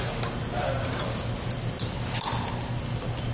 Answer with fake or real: real